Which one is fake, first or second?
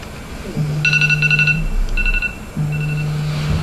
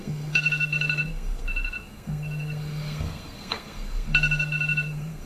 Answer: second